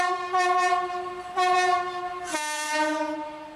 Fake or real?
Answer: fake